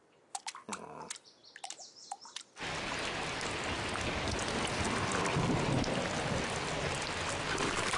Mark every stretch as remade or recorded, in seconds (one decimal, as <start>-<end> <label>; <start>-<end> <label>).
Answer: 0.0-8.0 recorded